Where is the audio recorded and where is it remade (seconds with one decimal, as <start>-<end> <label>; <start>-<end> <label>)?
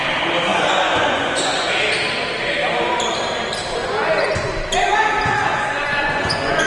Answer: 0.0-0.5 recorded; 0.5-1.7 remade; 1.7-3.8 recorded; 3.8-4.5 remade; 4.5-5.5 recorded; 5.5-6.7 remade